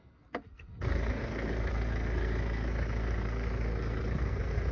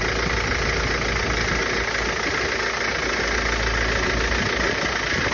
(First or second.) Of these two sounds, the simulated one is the first